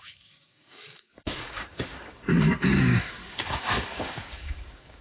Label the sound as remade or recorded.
remade